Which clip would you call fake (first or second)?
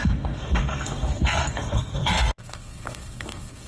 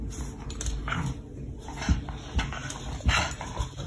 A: first